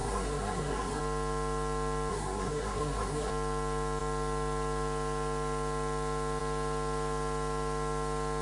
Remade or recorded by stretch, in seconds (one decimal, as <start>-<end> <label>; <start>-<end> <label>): 0.0-1.0 remade; 1.0-2.1 recorded; 2.1-3.3 remade; 3.3-8.4 recorded

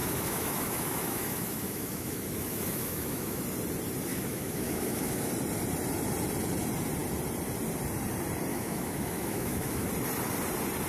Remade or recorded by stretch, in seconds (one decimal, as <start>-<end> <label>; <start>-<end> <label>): 0.0-3.4 remade; 3.4-4.1 recorded; 4.1-5.3 remade; 5.3-8.5 recorded; 8.5-9.9 remade; 9.9-10.9 recorded

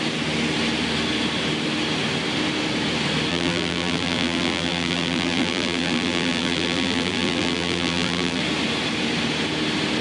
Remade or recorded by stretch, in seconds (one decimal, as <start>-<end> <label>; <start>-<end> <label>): 0.0-3.3 recorded; 3.3-8.4 remade; 8.4-10.0 recorded

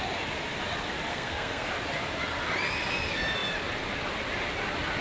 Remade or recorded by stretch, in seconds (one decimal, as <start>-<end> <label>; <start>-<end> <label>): 0.0-1.1 recorded; 1.1-1.7 remade; 1.7-5.0 recorded

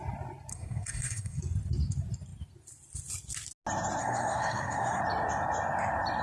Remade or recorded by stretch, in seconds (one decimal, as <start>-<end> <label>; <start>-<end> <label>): 0.0-0.5 recorded; 0.5-1.4 remade; 1.4-4.0 recorded; 4.0-5.0 remade; 5.0-6.2 recorded

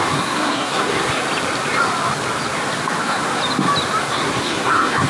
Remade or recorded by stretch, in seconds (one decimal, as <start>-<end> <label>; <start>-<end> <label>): 0.0-1.2 remade; 1.2-3.0 recorded; 3.0-3.4 remade; 3.4-4.0 recorded; 4.0-5.1 remade

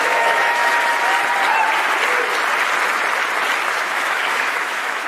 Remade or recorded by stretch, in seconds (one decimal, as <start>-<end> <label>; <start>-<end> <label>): 0.0-0.6 remade; 0.6-3.7 recorded; 3.7-5.1 remade

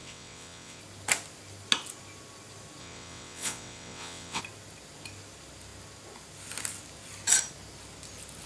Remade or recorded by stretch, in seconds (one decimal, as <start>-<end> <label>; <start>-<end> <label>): 0.0-0.8 remade; 0.8-2.8 recorded; 2.8-4.4 remade; 4.4-8.5 recorded